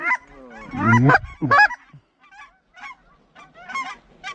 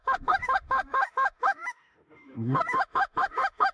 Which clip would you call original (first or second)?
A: first